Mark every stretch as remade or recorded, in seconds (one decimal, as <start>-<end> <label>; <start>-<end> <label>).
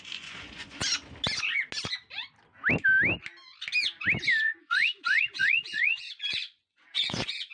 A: 0.0-0.8 remade; 0.8-4.4 recorded; 4.4-7.5 remade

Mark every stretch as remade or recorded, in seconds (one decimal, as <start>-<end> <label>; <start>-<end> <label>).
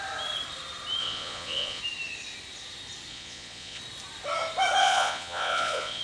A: 0.0-1.0 recorded; 1.0-1.8 remade; 1.8-3.1 recorded; 3.1-3.8 remade; 3.8-4.8 recorded; 4.8-6.0 remade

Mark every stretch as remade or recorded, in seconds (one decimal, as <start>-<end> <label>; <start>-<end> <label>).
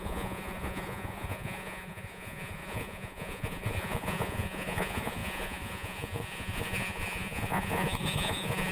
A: 0.0-8.7 remade